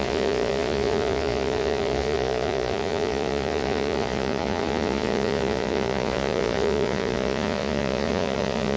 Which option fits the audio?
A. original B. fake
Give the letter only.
B